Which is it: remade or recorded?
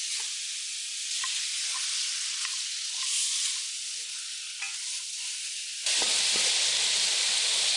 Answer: recorded